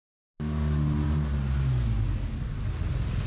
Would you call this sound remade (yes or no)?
no